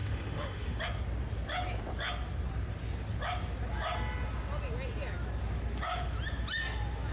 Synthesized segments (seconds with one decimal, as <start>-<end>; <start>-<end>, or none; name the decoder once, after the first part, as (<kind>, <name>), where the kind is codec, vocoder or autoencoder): 0.0-0.8 (autoencoder, DAC-VAE)